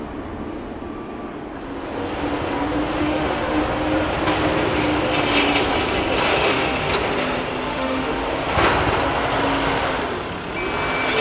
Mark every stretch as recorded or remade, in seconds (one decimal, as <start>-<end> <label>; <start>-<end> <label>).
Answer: 0.0-3.0 recorded; 3.0-3.6 remade; 3.6-6.3 recorded; 6.3-6.9 remade; 6.9-7.7 recorded; 7.7-8.2 remade; 8.2-11.2 recorded